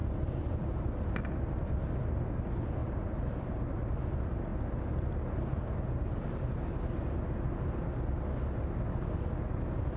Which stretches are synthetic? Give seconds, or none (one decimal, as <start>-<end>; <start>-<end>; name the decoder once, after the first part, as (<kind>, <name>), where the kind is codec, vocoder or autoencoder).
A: 2.8-3.9 (vocoder, BigVGAN v2)